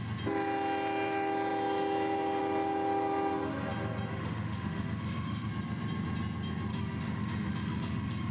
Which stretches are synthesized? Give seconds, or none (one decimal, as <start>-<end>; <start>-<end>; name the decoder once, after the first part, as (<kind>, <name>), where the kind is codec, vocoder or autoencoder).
4.1-5.5 (autoencoder, DAC-VAE); 6.7-8.3